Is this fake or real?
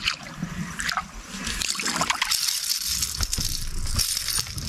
real